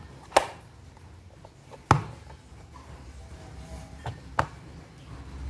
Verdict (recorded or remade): recorded